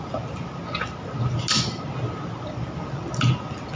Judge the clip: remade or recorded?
recorded